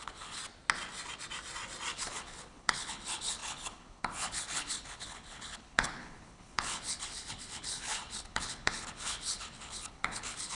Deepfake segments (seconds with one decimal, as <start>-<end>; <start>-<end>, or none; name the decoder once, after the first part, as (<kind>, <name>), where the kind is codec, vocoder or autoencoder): 0.0-0.4 (codec, HILCodec); 1.9-10.5